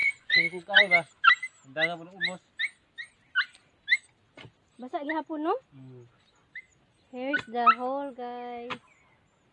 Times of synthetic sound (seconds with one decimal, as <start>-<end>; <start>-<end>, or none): 0.0-0.8